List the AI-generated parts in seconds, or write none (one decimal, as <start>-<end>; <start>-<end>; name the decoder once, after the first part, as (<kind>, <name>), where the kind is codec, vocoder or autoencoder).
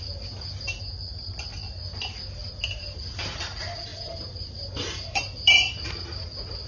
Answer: 2.4-3.4 (vocoder, BigVGAN v2); 3.9-5.9